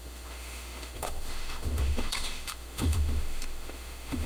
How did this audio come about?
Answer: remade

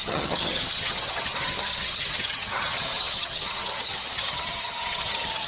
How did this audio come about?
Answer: remade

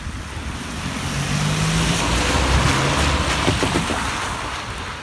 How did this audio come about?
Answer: recorded